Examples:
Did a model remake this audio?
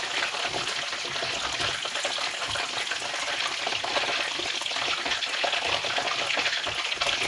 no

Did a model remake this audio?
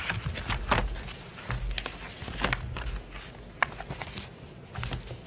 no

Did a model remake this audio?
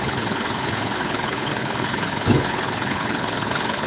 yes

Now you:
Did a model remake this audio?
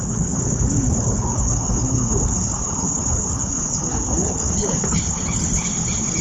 yes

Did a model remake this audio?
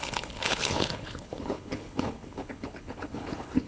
yes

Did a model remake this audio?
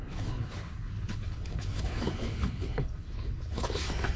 yes